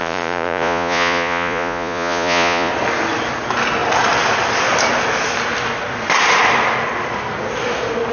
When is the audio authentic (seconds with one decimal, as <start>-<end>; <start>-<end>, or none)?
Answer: 2.7-8.1